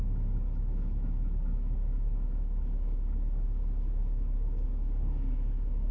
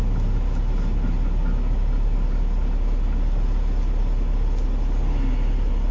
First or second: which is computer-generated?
first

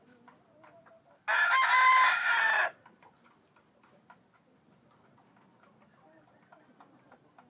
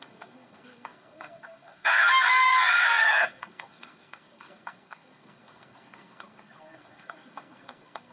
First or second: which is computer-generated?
second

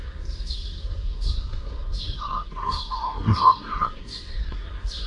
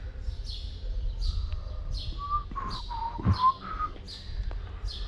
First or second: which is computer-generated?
first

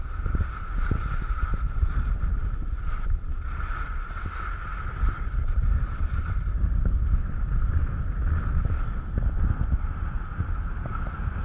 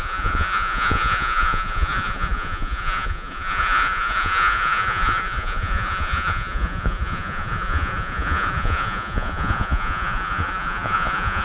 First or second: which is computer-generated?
second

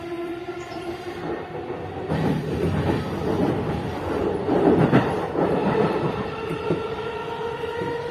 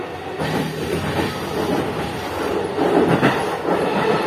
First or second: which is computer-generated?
first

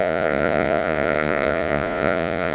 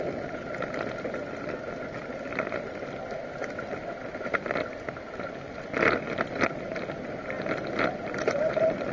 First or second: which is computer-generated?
first